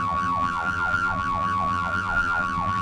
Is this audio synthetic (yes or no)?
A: yes